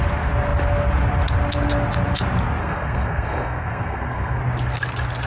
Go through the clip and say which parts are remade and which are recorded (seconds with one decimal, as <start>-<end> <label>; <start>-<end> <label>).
0.0-2.6 recorded; 2.6-4.4 remade; 4.4-5.3 recorded